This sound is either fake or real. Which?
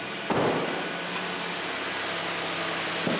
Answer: real